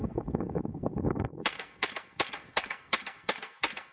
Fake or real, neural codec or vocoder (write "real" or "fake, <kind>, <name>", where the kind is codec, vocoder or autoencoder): fake, codec, SNAC